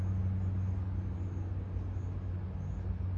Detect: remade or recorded recorded